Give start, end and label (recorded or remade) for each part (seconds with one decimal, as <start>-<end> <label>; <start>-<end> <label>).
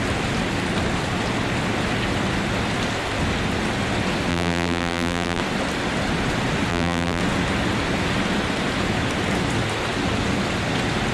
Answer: 0.0-4.3 recorded; 4.3-5.4 remade; 5.4-6.7 recorded; 6.7-7.2 remade; 7.2-11.1 recorded